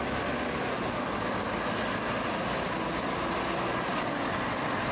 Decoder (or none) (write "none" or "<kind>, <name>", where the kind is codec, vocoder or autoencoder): none